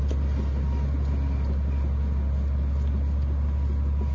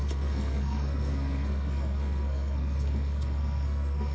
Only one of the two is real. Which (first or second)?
first